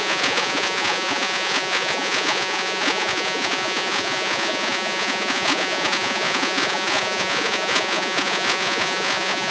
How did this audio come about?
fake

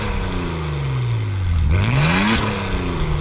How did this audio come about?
real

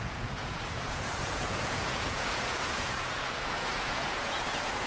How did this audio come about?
fake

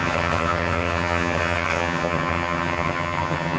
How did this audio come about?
fake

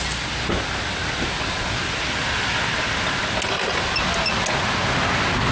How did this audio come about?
real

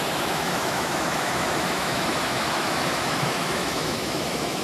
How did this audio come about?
fake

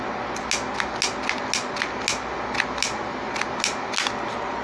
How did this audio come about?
real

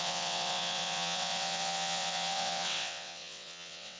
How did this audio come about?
fake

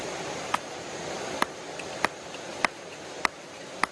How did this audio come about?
real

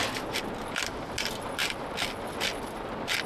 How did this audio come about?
real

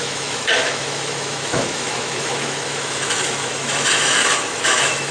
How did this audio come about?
fake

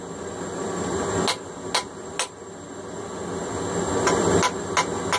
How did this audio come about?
real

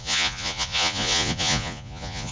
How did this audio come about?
fake